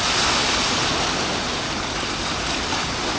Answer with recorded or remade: recorded